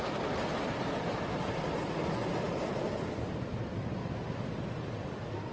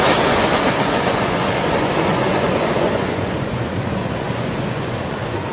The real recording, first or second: first